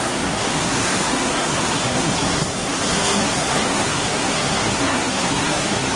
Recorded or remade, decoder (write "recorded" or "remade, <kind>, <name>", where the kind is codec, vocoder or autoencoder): remade, codec, SNAC